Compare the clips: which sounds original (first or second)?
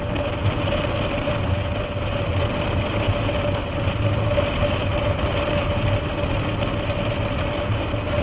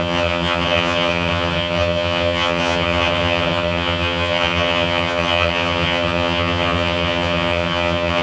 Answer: first